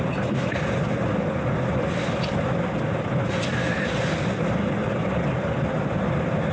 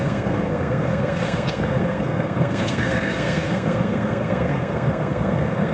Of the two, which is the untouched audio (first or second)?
first